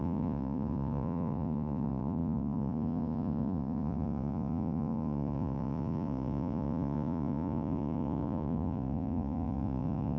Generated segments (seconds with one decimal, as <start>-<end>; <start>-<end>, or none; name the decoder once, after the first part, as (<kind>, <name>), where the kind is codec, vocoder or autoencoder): 0.0-10.2 (vocoder, Vocos)